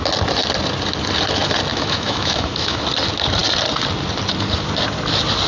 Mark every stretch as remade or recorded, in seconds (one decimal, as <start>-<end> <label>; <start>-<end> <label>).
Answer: 0.0-1.7 recorded; 1.7-2.8 remade; 2.8-5.5 recorded